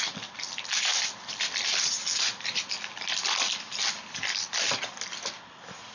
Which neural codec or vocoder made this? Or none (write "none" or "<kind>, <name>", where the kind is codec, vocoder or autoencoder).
none